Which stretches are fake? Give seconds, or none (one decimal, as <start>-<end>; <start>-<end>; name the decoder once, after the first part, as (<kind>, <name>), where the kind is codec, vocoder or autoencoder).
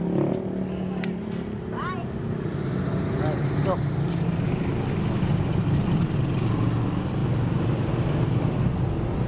none